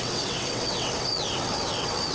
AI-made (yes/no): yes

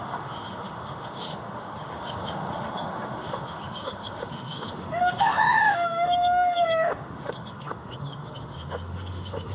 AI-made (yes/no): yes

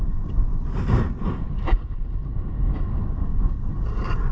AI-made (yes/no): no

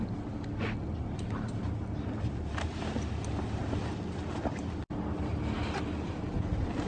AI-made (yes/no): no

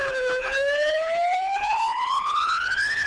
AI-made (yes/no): yes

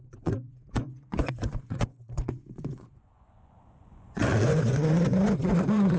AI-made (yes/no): yes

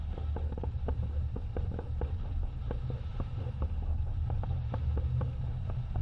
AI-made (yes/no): no